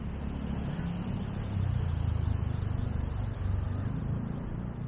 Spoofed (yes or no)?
no